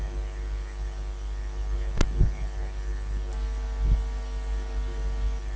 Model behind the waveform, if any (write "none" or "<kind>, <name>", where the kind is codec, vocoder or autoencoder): none